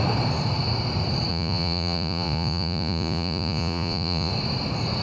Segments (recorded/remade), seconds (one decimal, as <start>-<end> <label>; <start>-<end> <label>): 0.0-1.3 recorded; 1.3-4.3 remade; 4.3-5.0 recorded